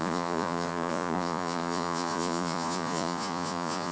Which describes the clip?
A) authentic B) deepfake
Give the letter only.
B